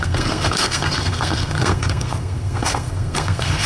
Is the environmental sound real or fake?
fake